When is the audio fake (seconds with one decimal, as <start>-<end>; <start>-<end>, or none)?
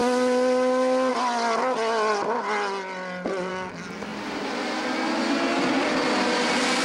none